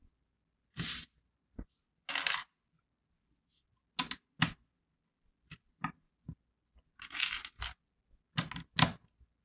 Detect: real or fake real